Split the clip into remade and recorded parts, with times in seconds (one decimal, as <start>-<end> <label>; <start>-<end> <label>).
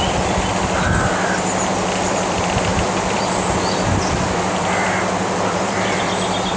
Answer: 0.0-0.5 remade; 0.5-1.7 recorded; 1.7-6.6 remade